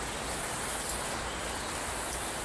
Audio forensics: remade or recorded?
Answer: recorded